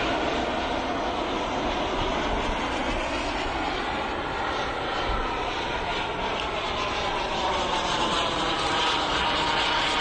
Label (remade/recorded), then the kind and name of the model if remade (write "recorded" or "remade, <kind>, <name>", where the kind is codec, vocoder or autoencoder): recorded